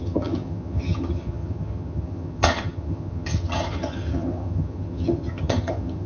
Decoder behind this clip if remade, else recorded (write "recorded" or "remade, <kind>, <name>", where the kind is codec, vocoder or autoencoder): remade, vocoder, HiFi-GAN